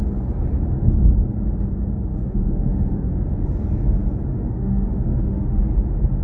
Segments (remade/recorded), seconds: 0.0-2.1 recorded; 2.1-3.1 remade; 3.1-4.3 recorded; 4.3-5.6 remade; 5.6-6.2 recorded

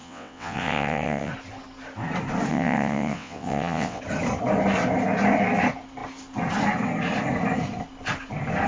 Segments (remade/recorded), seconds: 0.0-1.3 remade; 1.3-2.5 recorded; 2.5-4.0 remade; 4.0-8.7 recorded

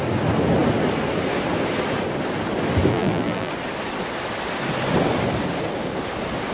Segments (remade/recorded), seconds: 0.0-2.9 recorded; 2.9-3.5 remade; 3.5-6.5 recorded

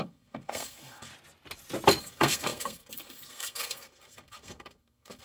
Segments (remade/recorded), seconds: 0.0-1.1 remade; 1.1-2.0 recorded; 2.0-5.2 remade

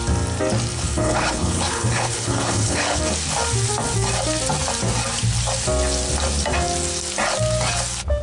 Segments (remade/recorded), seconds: 0.0-0.7 recorded; 0.7-3.0 remade; 3.0-8.2 recorded

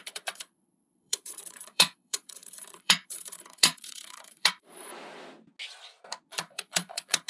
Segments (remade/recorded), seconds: 0.0-4.9 remade; 4.9-6.3 recorded; 6.3-7.3 remade